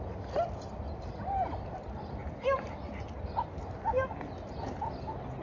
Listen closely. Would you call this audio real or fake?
real